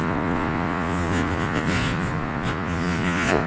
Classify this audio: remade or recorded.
remade